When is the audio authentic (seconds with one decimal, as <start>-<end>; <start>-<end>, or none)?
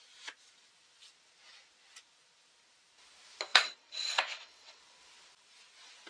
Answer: 0.0-3.5; 4.8-6.1